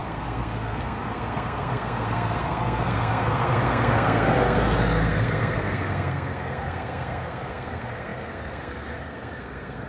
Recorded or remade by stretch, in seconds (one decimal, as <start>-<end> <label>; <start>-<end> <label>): 0.0-9.9 remade